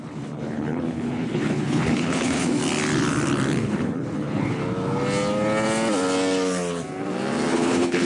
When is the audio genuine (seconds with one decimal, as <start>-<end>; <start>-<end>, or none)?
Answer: 2.6-3.6; 4.6-7.5